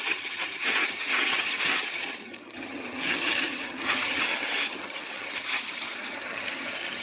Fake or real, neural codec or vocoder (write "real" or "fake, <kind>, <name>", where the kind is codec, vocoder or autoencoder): fake, vocoder, HiFi-GAN